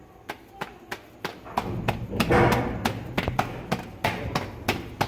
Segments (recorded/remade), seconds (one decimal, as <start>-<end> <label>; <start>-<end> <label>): 0.0-5.1 recorded